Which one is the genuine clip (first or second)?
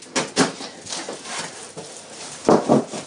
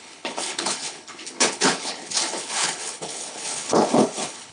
first